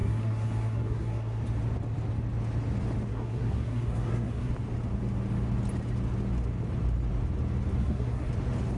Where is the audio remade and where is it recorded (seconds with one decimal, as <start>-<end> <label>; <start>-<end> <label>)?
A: 0.0-1.4 remade; 1.4-3.1 recorded; 3.1-4.5 remade; 4.5-7.8 recorded; 7.8-8.3 remade; 8.3-8.8 recorded

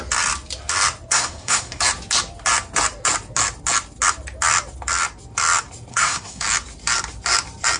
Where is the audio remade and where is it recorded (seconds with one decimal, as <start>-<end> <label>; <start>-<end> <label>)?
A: 0.0-1.1 recorded; 1.1-1.8 remade; 1.8-5.9 recorded; 5.9-6.4 remade; 6.4-7.8 recorded